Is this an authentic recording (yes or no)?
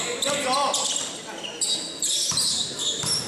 yes